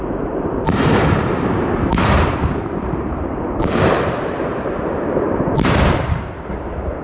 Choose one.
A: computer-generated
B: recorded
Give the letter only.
A